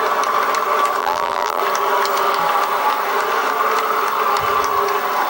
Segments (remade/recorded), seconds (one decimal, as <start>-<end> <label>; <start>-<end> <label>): 0.0-1.0 recorded; 1.0-1.6 remade; 1.6-5.3 recorded